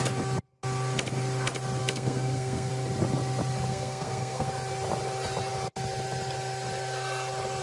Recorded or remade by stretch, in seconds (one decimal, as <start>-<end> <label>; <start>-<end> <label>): 0.0-1.8 recorded; 1.8-2.7 remade; 2.7-3.7 recorded; 3.7-4.5 remade; 4.5-7.6 recorded